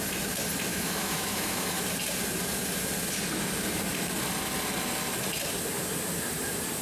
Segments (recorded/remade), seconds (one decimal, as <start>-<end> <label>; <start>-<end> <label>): 0.0-0.7 recorded; 0.7-1.8 remade; 1.8-6.8 recorded